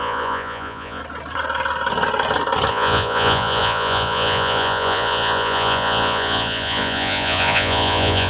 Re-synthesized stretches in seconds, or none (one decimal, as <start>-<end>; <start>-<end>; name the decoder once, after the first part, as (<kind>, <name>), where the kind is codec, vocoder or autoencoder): 0.0-1.0 (vocoder, Vocos); 2.7-8.3